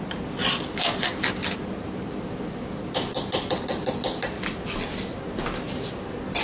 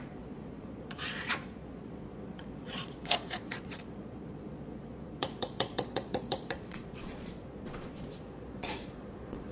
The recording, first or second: first